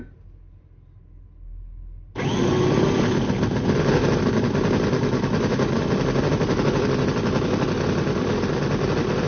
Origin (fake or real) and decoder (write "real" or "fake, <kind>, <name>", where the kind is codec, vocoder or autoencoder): real